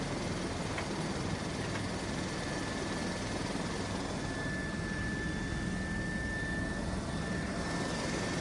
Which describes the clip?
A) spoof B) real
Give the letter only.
B